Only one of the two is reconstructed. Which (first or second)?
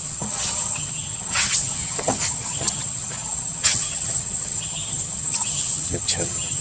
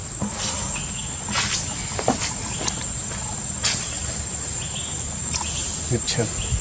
first